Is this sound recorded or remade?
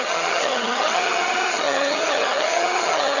remade